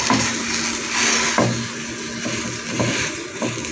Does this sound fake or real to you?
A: real